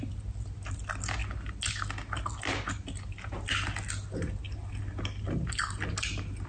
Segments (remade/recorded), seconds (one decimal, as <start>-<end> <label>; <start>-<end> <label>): 0.0-6.5 recorded